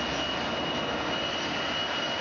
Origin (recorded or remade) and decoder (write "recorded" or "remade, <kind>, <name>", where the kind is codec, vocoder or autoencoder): recorded